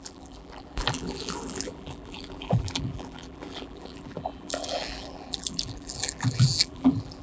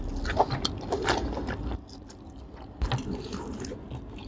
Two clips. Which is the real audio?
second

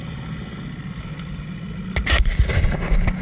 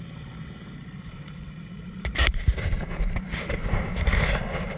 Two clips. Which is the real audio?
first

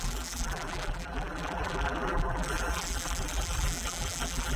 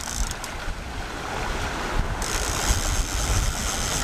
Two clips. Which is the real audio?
second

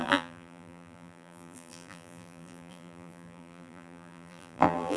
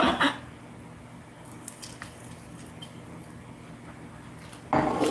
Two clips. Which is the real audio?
second